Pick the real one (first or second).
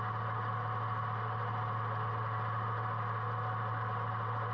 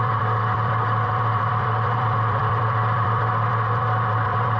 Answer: first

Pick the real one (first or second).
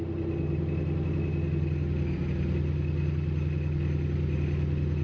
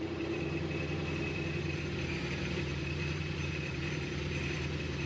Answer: first